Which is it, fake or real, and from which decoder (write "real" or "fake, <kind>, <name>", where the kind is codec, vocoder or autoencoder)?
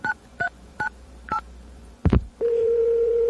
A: fake, vocoder, Vocos